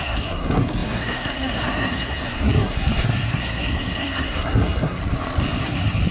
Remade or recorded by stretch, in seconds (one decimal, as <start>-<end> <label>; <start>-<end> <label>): 0.0-5.0 remade; 5.0-5.6 recorded; 5.6-6.1 remade